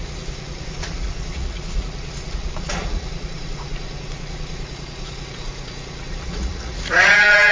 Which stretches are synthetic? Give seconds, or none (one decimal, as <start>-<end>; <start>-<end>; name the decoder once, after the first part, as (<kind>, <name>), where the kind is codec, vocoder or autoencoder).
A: 0.0-7.5 (vocoder, Vocos)